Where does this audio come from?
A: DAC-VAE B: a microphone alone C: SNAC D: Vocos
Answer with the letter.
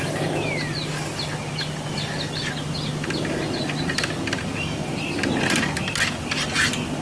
B